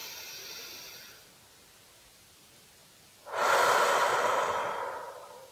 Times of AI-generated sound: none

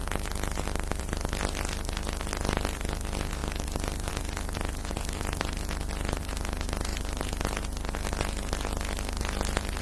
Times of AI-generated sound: 0.0-6.9 (vocoder, BigVGAN v2); 9.2-9.8